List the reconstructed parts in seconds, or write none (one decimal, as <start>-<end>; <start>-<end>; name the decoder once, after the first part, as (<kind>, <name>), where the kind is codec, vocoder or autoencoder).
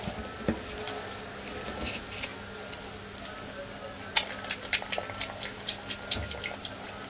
none